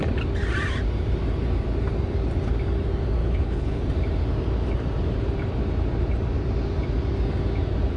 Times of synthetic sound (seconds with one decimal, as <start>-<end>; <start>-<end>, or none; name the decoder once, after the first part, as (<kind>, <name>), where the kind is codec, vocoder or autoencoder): 3.2-3.8 (codec, HILCodec)